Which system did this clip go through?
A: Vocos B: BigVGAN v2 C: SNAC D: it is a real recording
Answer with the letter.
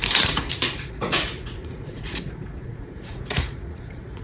A